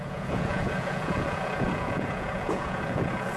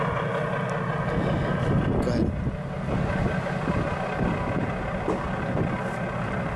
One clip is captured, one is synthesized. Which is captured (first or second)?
second